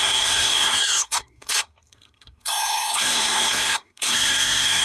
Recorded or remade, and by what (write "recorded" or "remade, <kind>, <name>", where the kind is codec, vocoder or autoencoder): remade, codec, SNAC